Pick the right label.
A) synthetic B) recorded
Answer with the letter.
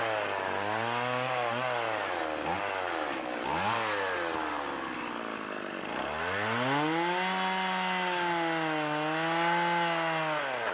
B